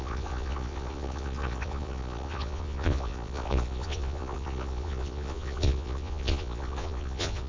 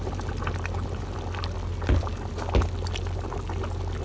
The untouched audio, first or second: second